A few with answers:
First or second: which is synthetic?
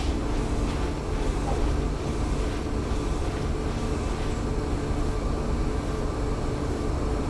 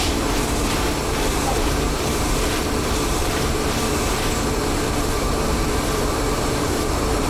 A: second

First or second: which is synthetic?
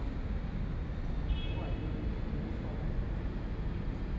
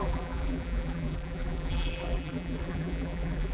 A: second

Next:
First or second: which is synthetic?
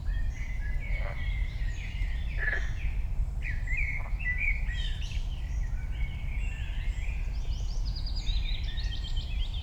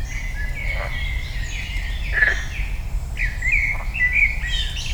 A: first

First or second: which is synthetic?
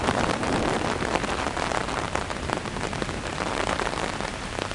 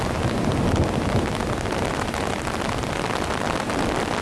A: first